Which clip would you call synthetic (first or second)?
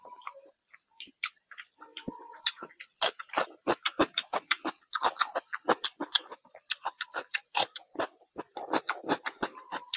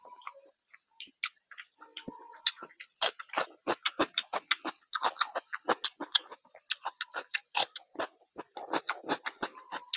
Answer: first